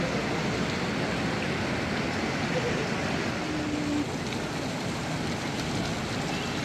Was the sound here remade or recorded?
recorded